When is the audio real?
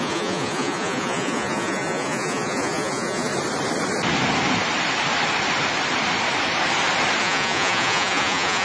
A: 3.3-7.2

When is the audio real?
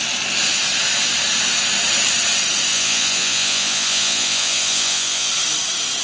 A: 0.0-2.7; 5.3-6.0